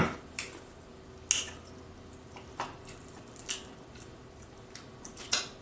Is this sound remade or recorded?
recorded